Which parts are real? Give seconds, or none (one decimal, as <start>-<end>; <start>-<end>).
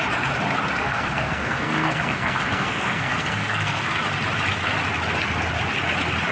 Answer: 0.0-0.8; 4.0-6.3